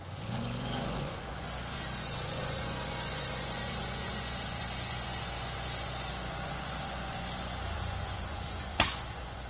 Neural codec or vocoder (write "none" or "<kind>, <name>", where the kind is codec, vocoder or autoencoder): vocoder, Vocos